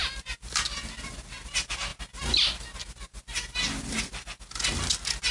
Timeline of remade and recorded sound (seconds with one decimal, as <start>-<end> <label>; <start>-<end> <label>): 0.0-5.3 recorded